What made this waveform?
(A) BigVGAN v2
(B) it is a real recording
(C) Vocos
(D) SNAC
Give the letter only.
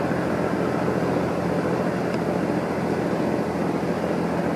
B